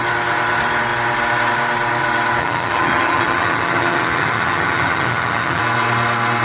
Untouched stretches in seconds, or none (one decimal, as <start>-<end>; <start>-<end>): 0.0-2.4; 5.6-6.4

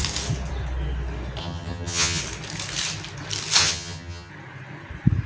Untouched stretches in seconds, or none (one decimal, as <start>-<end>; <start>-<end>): 0.0-1.4; 2.2-3.6; 4.3-5.3

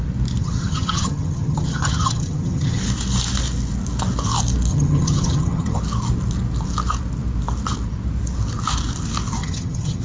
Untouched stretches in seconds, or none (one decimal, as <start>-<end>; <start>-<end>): 0.0-0.4; 2.8-4.7; 5.8-9.4

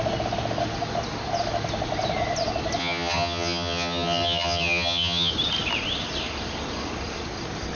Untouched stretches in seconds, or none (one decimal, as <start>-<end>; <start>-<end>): 0.0-2.8; 5.3-7.7

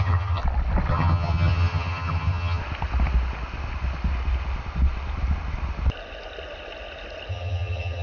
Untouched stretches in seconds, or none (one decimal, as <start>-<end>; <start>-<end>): 0.4-0.9; 2.6-7.3

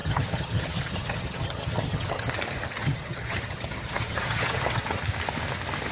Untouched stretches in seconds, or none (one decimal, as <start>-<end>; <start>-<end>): 2.3-2.8; 5.0-5.9

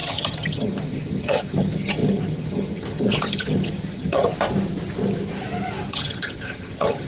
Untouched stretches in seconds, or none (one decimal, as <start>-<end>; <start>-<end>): 4.3-5.9

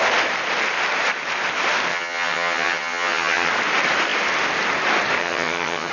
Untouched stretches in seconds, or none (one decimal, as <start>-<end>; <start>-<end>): 0.0-1.9; 3.5-5.2